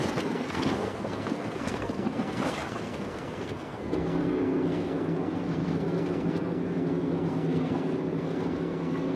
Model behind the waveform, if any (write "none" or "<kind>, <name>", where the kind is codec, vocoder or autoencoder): codec, SNAC